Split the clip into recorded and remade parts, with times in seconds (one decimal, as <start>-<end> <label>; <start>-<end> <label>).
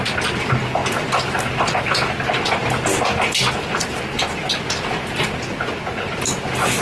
0.0-6.8 recorded